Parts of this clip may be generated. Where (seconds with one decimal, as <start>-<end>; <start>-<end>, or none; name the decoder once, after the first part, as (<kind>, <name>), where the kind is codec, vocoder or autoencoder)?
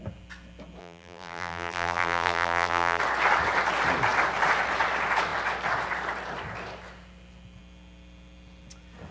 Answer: 0.8-3.0 (vocoder, BigVGAN v2)